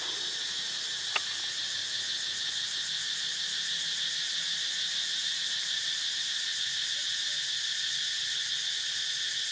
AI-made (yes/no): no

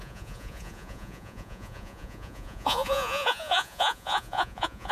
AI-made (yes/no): yes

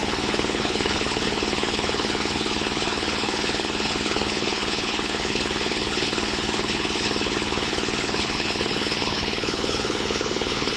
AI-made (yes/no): yes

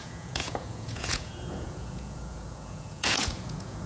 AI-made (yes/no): yes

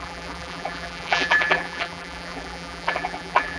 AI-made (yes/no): yes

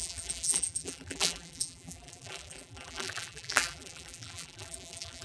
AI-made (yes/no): yes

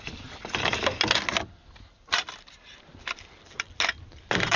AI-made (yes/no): no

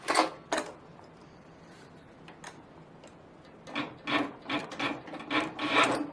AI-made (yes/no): no